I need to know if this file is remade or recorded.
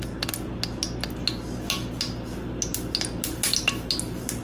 recorded